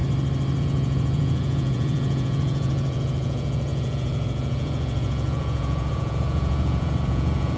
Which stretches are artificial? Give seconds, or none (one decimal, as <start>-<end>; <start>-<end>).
0.6-7.6